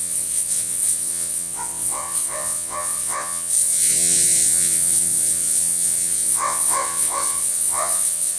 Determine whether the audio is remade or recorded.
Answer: remade